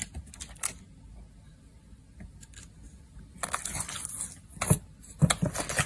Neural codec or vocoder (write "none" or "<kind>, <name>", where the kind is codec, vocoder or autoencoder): none